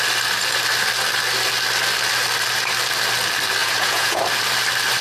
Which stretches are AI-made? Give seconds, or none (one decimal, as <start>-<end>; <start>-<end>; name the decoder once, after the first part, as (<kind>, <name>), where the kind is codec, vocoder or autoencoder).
3.6-4.2 (vocoder, Vocos)